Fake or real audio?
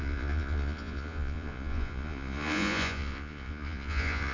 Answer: fake